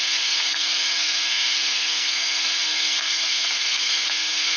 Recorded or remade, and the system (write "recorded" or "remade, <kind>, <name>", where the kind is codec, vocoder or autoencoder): remade, codec, SNAC